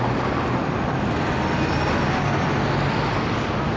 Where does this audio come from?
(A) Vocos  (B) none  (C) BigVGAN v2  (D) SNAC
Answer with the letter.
B